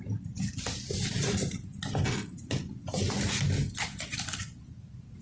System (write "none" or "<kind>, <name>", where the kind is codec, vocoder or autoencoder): none